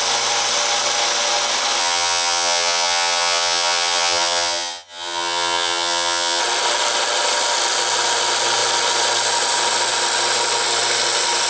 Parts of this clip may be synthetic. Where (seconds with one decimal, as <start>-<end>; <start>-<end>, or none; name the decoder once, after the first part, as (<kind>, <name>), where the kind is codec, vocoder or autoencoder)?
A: 1.8-6.4 (vocoder, HiFi-GAN)